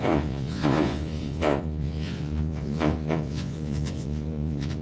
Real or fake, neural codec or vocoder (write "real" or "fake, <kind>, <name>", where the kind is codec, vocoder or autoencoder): fake, vocoder, Vocos